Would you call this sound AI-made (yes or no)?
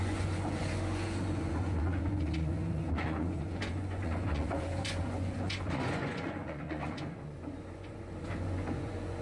yes